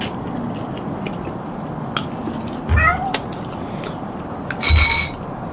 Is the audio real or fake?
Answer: real